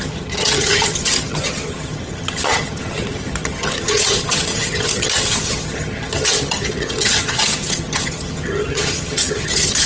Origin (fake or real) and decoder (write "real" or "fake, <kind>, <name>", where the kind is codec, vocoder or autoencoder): fake, vocoder, HiFi-GAN